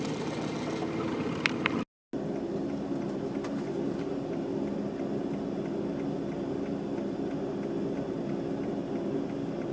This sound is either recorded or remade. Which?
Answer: recorded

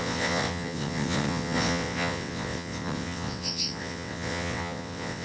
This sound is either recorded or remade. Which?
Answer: remade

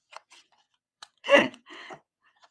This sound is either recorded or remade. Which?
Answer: remade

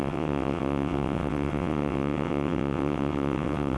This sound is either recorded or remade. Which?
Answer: remade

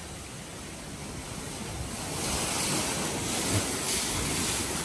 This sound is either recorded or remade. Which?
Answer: recorded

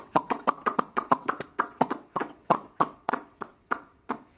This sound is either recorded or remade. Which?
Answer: remade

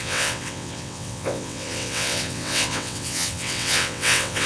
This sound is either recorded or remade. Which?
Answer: remade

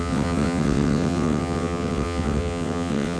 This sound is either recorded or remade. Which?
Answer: remade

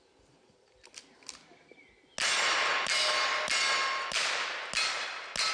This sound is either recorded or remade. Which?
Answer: recorded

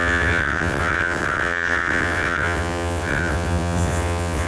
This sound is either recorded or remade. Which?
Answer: remade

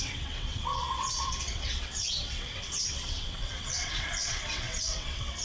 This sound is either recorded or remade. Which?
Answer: remade